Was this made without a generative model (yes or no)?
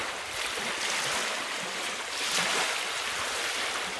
yes